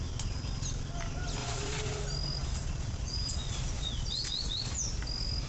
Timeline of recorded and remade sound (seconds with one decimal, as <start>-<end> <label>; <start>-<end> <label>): 0.0-1.4 recorded; 1.4-2.0 remade; 2.0-2.4 recorded; 2.4-4.8 remade; 4.8-5.5 recorded